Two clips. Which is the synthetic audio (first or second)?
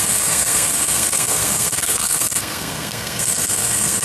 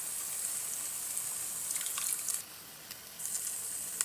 first